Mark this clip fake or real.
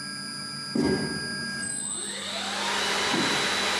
real